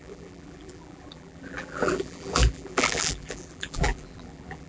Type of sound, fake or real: fake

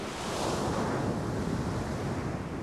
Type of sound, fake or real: real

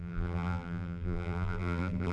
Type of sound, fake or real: fake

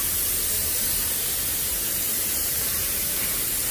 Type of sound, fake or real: fake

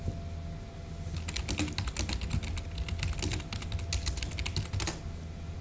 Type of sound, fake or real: real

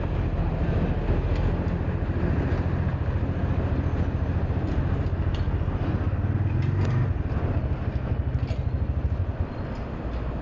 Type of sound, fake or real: real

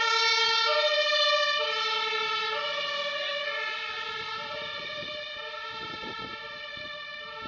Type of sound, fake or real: real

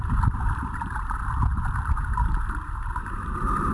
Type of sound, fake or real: fake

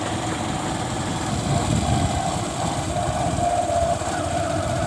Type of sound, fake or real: fake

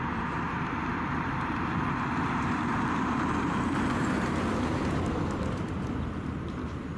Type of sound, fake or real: fake